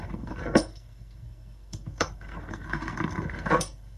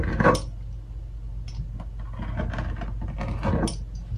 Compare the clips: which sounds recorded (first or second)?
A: second